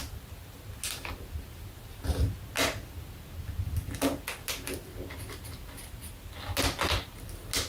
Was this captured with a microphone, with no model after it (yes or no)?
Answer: yes